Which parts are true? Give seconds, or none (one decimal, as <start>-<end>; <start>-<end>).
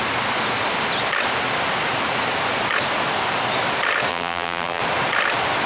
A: 0.0-4.1; 4.8-5.7